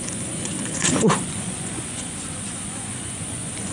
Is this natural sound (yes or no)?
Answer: no